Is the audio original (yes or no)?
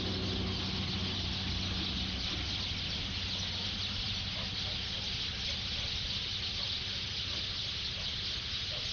yes